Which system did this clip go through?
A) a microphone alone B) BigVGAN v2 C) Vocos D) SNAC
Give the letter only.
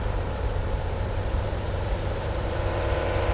B